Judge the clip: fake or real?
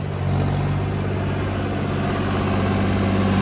real